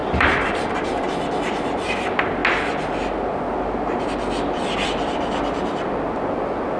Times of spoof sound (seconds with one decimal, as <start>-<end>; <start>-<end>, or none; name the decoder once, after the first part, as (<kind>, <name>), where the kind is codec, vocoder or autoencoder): 0.0-1.2 (vocoder, BigVGAN v2)